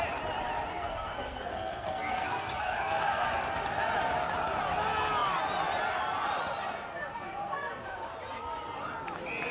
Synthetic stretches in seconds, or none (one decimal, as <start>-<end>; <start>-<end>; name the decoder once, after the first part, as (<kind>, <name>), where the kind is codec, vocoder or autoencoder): 0.7-3.3 (codec, SNAC); 7.0-8.1